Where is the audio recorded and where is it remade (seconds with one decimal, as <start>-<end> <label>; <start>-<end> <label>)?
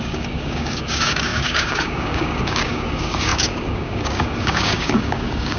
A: 0.0-5.6 remade